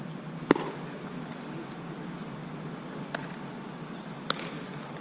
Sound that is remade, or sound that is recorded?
recorded